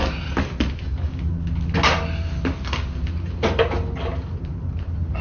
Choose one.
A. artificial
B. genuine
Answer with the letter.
B